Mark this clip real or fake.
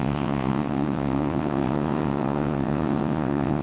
fake